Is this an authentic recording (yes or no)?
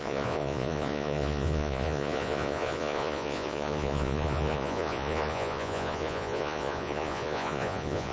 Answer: no